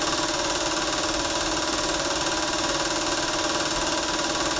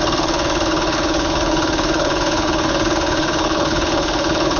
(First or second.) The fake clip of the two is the second